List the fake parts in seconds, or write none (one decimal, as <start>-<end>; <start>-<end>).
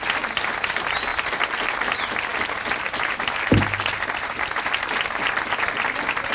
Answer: none